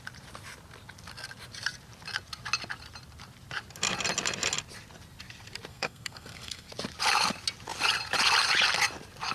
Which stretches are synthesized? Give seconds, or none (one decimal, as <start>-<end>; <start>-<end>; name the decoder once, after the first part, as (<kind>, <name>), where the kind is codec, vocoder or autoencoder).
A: 5.7-6.7 (codec, SNAC)